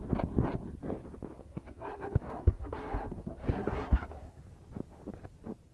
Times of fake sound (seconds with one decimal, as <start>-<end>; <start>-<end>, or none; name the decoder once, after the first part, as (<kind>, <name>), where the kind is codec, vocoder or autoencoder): 1.4-4.4 (codec, SNAC)